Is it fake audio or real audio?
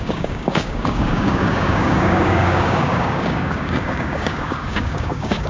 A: fake